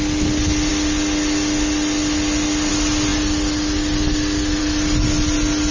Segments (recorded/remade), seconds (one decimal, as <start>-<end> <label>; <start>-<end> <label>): 0.0-5.7 recorded